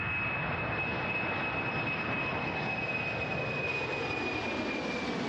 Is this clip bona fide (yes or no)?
yes